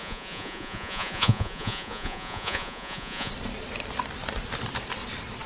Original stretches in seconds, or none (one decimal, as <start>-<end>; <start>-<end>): 3.3-5.5

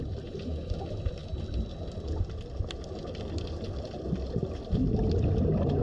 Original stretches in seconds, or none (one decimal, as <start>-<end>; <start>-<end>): 0.0-5.8

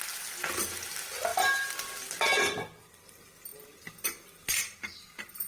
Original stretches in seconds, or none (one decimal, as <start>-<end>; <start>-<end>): 0.0-5.5

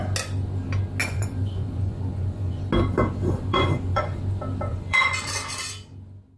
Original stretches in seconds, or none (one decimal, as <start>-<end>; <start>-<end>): 0.0-1.0; 2.6-3.2; 4.2-4.7; 5.3-6.4

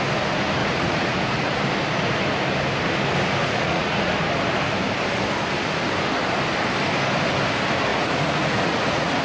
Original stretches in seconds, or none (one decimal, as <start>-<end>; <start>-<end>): 0.0-0.6; 1.6-3.4; 4.1-7.9

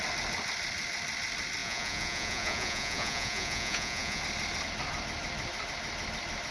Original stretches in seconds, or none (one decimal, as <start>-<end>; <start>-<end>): 0.0-1.6; 4.2-6.5

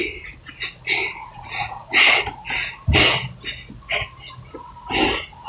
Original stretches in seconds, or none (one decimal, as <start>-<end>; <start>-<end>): 0.0-1.0; 2.4-5.5